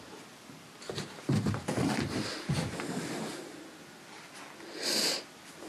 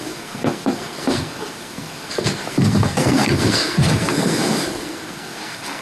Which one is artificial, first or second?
second